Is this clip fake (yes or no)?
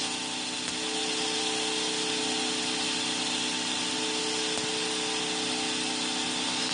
no